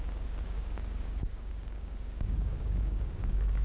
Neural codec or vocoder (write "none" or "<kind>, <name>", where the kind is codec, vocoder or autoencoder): codec, DAC